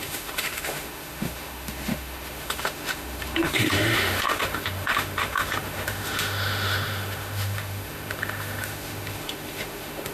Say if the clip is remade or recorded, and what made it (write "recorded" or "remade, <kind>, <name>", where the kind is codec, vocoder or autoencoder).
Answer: remade, autoencoder, DAC-VAE